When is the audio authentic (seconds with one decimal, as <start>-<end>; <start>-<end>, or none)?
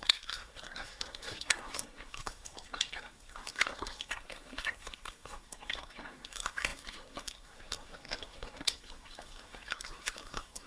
none